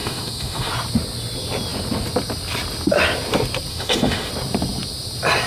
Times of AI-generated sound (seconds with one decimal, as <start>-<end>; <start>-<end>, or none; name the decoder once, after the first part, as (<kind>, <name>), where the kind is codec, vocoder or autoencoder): 0.0-0.7 (autoencoder, DAC-VAE); 3.7-4.3